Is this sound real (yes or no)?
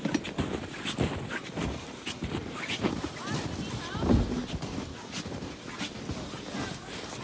yes